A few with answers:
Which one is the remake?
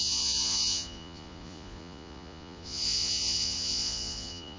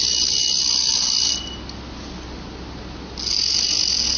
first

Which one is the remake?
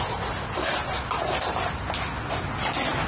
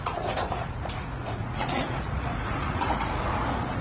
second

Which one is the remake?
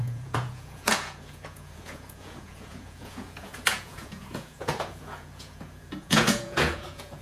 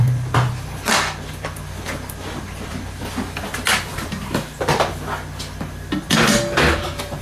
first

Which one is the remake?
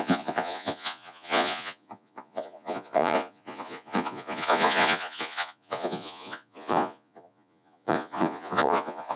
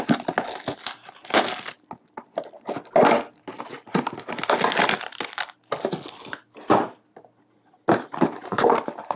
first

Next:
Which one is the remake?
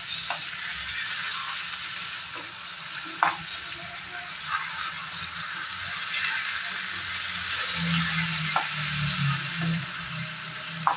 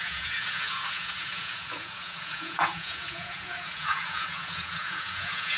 second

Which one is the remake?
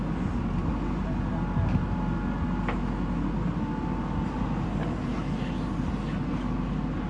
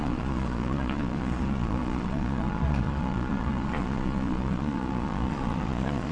second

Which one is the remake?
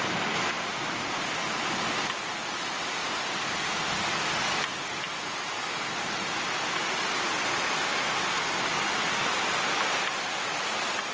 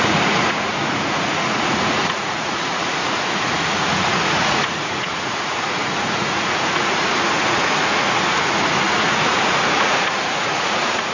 second